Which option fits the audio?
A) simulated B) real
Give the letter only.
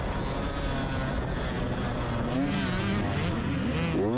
B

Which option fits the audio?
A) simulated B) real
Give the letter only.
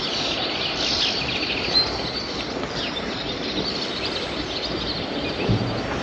B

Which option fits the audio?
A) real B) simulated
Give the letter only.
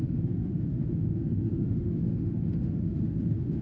B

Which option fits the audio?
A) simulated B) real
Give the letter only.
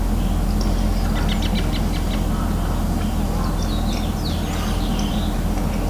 B